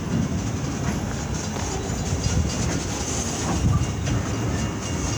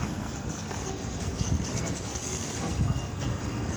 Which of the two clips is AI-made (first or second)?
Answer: second